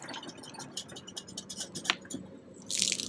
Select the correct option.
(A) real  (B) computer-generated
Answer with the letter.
A